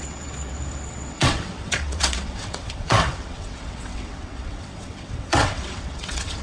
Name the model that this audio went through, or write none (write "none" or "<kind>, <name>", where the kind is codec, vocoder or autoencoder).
vocoder, WaveNeXt